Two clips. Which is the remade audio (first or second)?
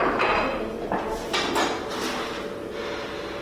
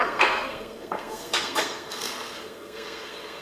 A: second